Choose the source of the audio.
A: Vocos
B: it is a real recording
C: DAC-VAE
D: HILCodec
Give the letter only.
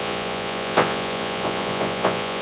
A